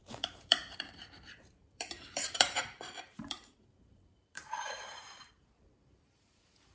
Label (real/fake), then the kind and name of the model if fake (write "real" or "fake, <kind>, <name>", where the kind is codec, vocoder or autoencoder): fake, vocoder, BigVGAN v2